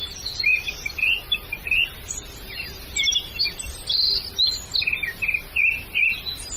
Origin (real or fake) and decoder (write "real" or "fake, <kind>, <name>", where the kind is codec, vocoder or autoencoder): real